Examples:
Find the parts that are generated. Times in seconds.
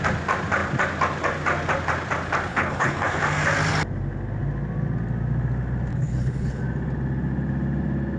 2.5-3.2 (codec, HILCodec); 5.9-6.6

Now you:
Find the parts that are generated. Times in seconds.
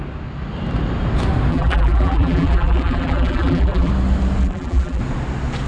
1.5-3.9 (vocoder, BigVGAN v2); 4.4-5.0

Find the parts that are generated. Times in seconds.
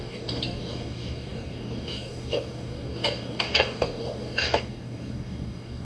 0.0-5.8 (codec, DAC)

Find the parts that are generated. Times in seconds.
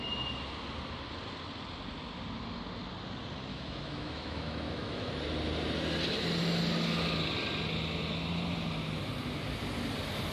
3.5-5.1 (autoencoder, DAC-VAE)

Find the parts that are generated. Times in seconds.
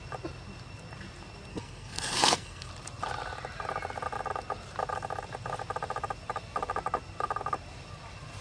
1.5-2.7 (codec, SNAC)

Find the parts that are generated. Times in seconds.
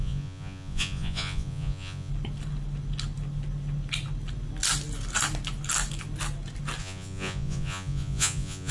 0.0-2.1 (vocoder, Vocos); 6.8-8.7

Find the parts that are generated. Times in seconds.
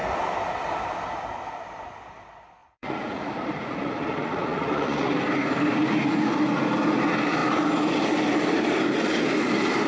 2.6-5.1 (vocoder, Vocos)